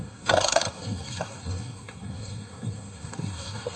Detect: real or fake fake